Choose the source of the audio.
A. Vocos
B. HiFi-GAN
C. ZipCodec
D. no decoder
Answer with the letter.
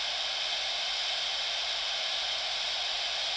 D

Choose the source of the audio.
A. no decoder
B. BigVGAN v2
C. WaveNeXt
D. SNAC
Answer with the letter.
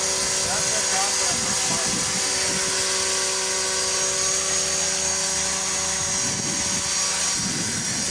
A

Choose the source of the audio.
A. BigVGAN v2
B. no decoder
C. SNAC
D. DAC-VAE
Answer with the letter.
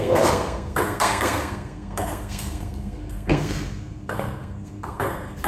C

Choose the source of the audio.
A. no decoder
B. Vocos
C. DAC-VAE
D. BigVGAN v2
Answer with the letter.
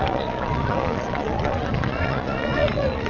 B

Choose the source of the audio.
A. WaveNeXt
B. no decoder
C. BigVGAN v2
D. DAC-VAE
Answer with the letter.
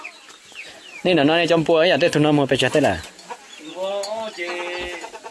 B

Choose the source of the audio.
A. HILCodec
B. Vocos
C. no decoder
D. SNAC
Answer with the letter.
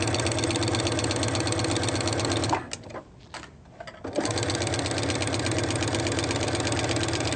C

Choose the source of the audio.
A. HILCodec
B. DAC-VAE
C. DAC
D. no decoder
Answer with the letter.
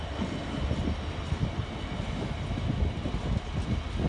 D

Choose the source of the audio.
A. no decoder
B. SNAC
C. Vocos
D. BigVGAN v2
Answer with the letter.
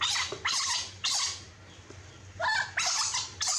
A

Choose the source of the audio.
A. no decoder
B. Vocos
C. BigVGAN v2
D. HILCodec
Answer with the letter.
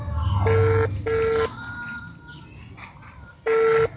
A